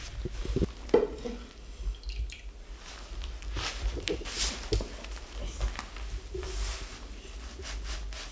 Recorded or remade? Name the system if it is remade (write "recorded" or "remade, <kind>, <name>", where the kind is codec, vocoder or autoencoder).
recorded